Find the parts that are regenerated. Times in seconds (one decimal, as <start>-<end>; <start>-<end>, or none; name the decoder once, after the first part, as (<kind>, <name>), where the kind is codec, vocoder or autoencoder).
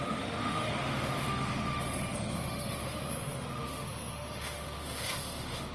0.0-5.7 (autoencoder, DAC-VAE)